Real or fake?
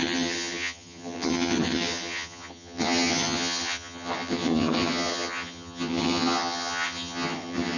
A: fake